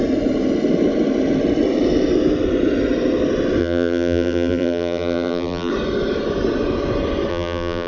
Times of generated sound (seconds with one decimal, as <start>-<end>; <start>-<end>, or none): 3.6-5.7; 7.3-7.9

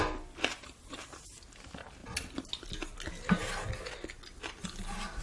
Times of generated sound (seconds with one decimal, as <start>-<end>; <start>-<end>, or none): none

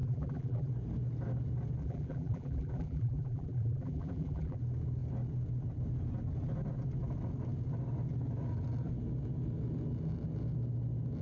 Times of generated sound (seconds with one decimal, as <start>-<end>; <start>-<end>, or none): 0.0-0.7; 1.8-4.6

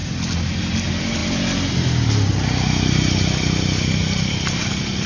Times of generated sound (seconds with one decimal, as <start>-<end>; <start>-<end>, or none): none

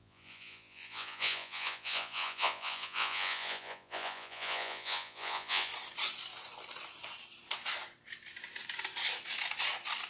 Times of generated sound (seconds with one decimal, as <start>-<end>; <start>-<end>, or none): 0.0-5.7

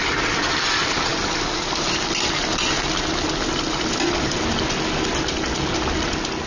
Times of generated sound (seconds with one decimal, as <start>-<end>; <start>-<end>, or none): none

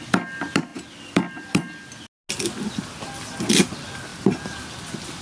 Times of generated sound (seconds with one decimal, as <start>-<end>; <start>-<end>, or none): none